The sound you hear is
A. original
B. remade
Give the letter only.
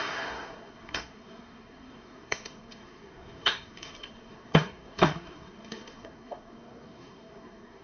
B